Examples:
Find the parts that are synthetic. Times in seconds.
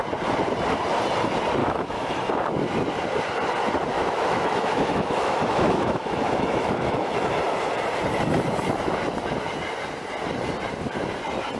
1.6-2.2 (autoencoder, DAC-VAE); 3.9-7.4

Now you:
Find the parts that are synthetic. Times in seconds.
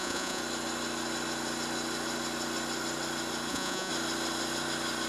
0.0-0.4 (vocoder, Vocos); 3.5-3.9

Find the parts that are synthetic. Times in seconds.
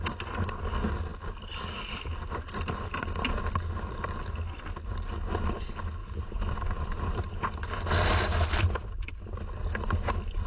6.0-9.4 (vocoder, BigVGAN v2)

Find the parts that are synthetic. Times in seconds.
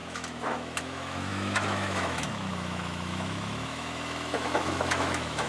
0.0-5.5 (autoencoder, DAC-VAE)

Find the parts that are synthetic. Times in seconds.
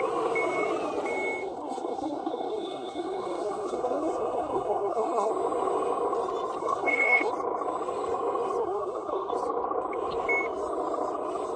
1.4-5.3 (codec, SNAC); 6.6-7.3; 8.6-9.3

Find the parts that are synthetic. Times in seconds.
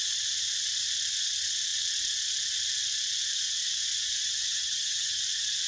4.5-5.2 (vocoder, HiFi-GAN)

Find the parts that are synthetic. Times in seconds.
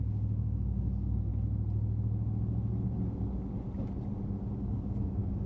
0.0-1.3 (codec, DAC); 4.6-5.5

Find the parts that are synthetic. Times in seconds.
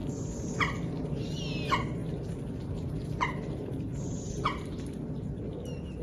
none